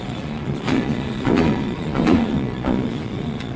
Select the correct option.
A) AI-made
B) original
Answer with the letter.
A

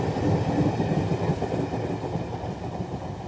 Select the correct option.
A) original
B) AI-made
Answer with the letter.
A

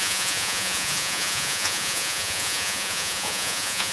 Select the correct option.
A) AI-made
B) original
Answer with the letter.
A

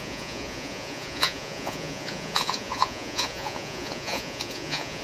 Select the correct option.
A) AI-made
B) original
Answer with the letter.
A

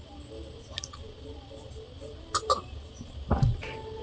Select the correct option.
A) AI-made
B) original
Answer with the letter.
B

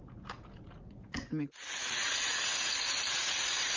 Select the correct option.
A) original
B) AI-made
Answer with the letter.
B